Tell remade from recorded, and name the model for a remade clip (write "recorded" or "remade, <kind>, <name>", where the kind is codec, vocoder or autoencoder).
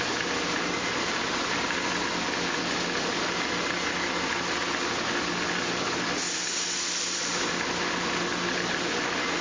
recorded